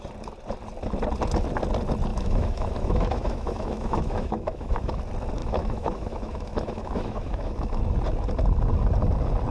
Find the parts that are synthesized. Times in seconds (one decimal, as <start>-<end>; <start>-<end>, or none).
2.1-5.0; 5.4-7.8